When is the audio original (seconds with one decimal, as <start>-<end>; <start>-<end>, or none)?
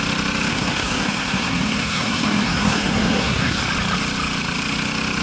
0.0-0.5; 3.6-5.2